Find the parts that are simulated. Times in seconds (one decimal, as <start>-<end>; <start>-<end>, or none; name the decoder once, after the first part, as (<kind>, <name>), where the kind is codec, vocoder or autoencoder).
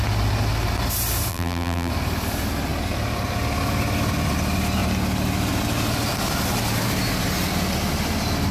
1.3-1.9 (vocoder, BigVGAN v2)